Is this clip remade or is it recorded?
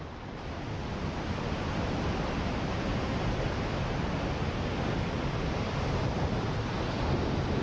recorded